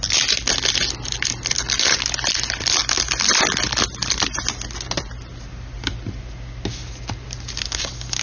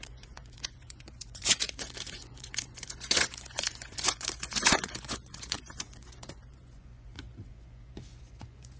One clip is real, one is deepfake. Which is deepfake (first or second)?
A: second